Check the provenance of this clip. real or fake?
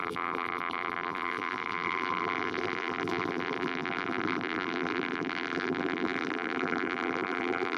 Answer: fake